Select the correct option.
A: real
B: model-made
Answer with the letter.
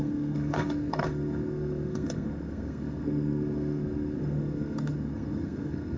B